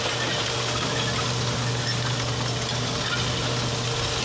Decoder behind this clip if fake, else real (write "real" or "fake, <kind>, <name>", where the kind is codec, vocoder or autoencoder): real